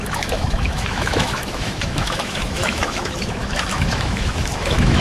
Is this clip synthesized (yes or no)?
yes